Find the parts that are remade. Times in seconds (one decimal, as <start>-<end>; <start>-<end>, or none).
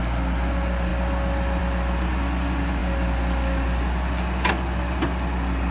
none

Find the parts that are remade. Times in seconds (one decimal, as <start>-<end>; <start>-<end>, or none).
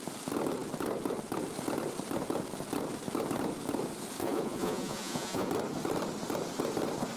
4.2-5.5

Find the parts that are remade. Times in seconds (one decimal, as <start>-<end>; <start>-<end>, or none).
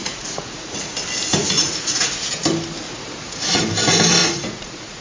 0.0-0.9; 1.4-2.3; 2.9-3.6; 4.2-5.0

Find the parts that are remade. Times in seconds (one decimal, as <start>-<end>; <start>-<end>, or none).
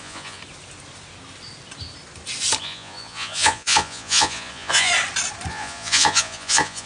0.0-0.4; 2.6-4.9; 5.5-6.9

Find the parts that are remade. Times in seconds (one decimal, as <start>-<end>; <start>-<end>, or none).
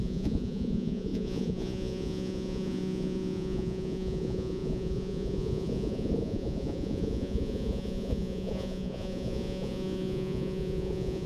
0.0-11.3